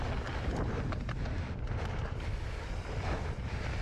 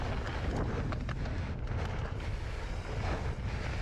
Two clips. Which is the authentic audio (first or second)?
second